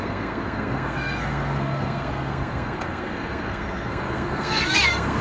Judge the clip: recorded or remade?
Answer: remade